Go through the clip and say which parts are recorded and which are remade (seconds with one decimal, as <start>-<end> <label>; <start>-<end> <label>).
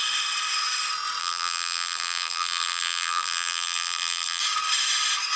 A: 0.0-1.2 recorded; 1.2-4.4 remade; 4.4-5.4 recorded